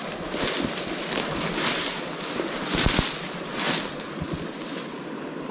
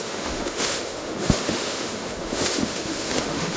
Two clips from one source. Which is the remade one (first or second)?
second